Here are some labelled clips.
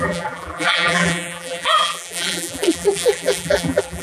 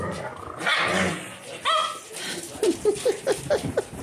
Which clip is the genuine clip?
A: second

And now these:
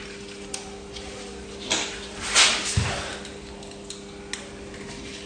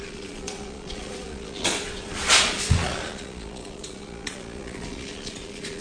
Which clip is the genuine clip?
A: first